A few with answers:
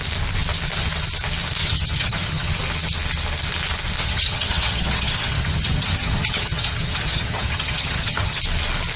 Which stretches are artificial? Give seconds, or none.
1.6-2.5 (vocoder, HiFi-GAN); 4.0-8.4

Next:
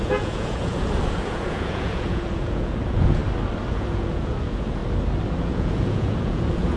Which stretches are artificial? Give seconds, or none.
0.0-3.2 (vocoder, Vocos); 3.7-4.8; 5.4-6.8

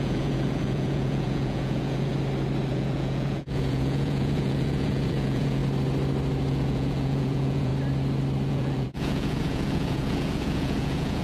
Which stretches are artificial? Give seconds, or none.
0.0-2.1 (vocoder, Vocos); 2.7-5.6; 6.5-7.7; 8.5-11.2

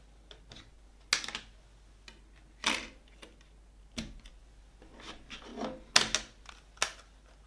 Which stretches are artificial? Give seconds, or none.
none

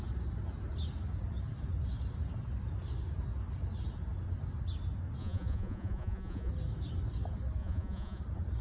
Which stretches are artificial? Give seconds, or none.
5.2-6.5 (vocoder, Vocos); 7.6-8.2